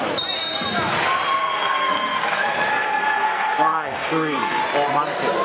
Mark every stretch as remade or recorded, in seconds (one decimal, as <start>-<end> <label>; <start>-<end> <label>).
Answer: 0.0-1.4 recorded; 1.4-4.6 remade; 4.6-5.4 recorded